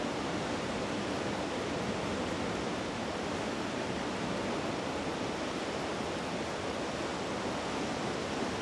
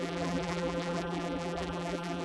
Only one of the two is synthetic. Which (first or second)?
second